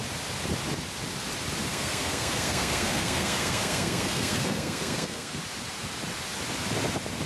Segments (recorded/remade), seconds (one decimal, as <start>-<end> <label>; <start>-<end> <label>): 0.0-1.7 recorded; 1.7-5.4 remade; 5.4-7.3 recorded